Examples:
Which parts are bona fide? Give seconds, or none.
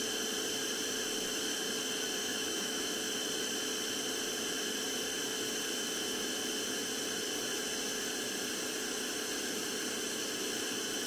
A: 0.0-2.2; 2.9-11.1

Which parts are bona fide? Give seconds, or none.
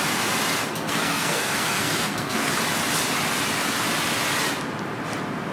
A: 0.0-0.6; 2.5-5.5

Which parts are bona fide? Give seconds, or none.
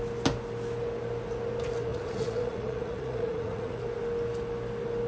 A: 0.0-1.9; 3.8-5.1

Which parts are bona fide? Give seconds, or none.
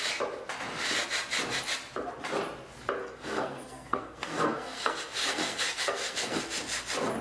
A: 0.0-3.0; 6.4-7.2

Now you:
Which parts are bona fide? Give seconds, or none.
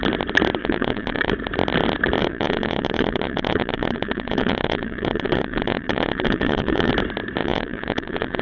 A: 0.0-0.6; 1.3-2.2; 6.9-7.4